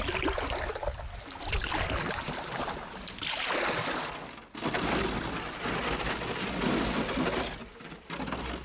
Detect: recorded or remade recorded